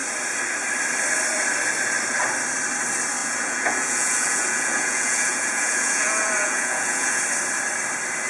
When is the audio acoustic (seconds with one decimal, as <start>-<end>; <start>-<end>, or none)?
0.0-3.2; 7.2-8.3